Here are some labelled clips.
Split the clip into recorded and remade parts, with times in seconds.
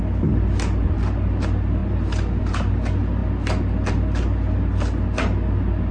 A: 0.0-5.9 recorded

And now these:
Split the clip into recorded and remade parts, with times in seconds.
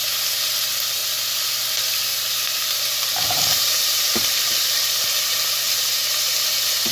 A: 0.0-2.1 recorded; 2.1-5.8 remade; 5.8-6.9 recorded